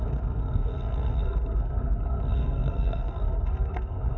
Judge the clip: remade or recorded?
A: remade